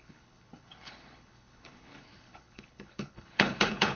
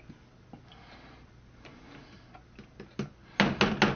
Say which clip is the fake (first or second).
first